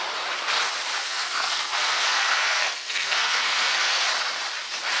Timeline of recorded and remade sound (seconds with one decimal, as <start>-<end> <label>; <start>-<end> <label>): 0.0-1.0 recorded; 1.0-4.0 remade; 4.0-5.0 recorded